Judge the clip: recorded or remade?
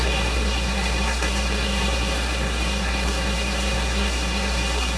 remade